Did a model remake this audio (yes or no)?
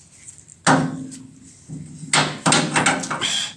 no